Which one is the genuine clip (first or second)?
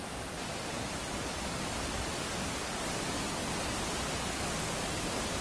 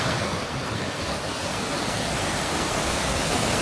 first